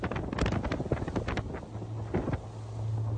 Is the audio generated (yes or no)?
no